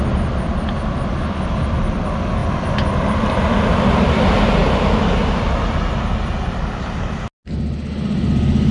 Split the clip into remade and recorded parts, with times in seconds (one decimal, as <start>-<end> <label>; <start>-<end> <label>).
0.0-8.7 recorded